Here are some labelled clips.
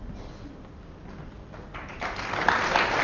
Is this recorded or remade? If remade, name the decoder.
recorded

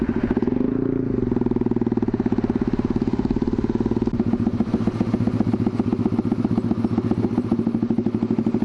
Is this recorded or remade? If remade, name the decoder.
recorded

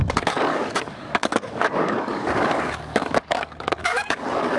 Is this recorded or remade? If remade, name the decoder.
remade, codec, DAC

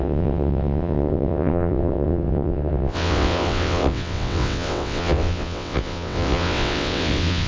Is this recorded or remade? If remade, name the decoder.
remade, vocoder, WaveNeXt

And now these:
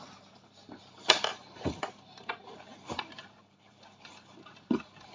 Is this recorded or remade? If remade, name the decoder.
remade, vocoder, BigVGAN v2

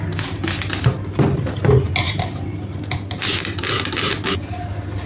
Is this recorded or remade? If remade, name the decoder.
recorded